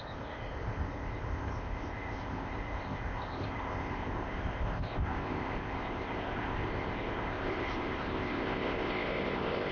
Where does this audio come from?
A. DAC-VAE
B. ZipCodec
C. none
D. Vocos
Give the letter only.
B